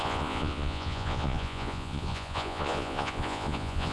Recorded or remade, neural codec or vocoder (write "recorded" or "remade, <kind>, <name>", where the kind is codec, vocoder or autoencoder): remade, vocoder, Vocos